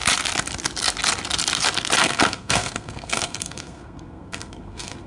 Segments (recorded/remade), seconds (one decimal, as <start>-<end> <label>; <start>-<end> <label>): 0.0-2.0 recorded; 2.0-5.1 remade